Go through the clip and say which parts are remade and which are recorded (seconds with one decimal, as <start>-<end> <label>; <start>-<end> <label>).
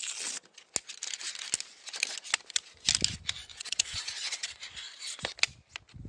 0.0-3.5 recorded; 3.5-4.6 remade; 4.6-6.1 recorded